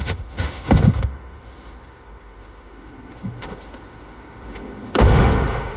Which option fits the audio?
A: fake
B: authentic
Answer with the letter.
A